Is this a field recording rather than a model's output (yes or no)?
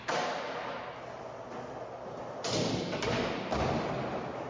yes